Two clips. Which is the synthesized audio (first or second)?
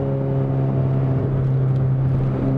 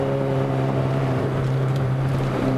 second